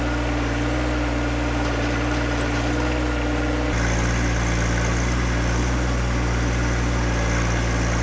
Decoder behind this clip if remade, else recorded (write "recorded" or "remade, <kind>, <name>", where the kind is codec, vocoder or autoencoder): recorded